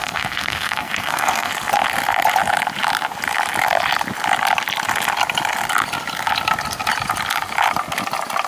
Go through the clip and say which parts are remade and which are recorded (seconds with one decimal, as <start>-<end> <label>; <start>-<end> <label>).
0.0-1.5 remade; 1.5-8.5 recorded